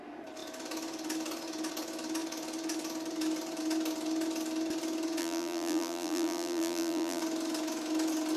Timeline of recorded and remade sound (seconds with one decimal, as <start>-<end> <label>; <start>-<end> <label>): 0.0-5.2 recorded; 5.2-7.2 remade; 7.2-8.4 recorded